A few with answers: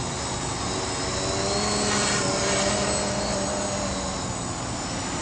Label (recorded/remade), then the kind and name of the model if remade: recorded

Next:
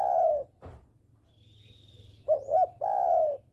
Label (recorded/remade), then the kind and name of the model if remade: recorded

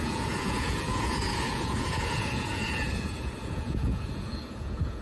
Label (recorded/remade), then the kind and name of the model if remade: remade, vocoder, Vocos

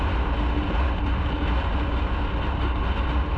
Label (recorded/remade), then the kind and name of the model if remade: recorded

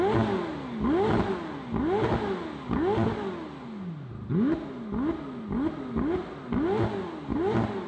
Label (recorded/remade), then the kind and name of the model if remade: recorded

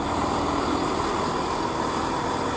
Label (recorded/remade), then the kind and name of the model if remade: recorded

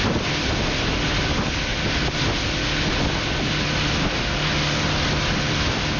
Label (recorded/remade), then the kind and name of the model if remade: recorded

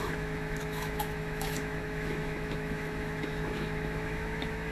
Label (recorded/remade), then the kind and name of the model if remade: remade, autoencoder, DAC-VAE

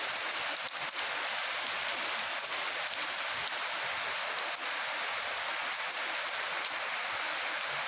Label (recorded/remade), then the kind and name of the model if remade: recorded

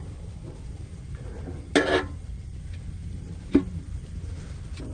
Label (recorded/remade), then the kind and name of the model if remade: recorded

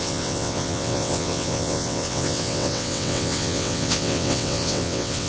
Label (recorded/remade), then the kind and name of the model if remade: remade, vocoder, WaveNeXt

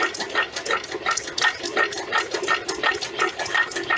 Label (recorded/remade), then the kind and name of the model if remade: recorded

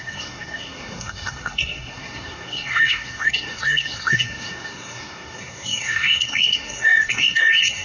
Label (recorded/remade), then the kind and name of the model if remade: remade, codec, SNAC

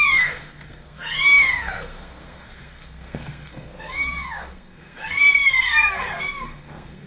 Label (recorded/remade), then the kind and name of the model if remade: remade, codec, SNAC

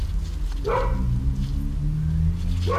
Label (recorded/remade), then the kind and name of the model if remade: recorded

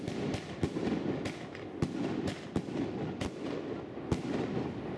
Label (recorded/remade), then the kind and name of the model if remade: recorded